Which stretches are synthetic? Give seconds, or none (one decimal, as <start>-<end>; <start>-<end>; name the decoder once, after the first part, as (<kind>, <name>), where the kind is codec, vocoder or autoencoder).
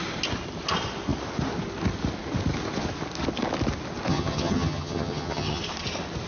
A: 4.1-5.6 (vocoder, HiFi-GAN)